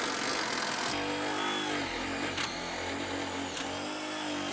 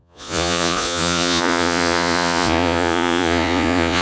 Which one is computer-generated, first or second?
second